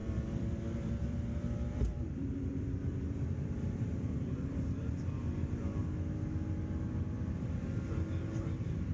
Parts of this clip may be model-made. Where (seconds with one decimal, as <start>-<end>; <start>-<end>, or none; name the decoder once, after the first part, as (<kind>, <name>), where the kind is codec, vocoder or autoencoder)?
0.0-5.2 (vocoder, BigVGAN v2)